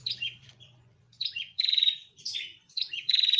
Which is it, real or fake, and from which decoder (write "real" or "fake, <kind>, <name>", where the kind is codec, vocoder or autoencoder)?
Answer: fake, vocoder, Vocos